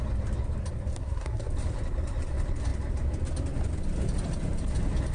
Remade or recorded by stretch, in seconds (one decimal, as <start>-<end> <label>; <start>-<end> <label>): 0.0-1.0 recorded; 1.0-1.5 remade; 1.5-5.1 recorded